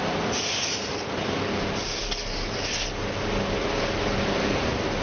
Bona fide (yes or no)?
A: yes